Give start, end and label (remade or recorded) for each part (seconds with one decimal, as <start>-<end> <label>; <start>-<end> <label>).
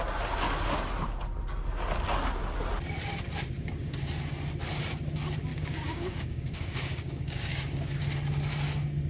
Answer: 0.0-5.5 recorded; 5.5-8.0 remade; 8.0-9.1 recorded